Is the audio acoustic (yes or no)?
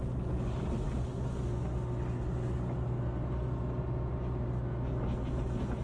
yes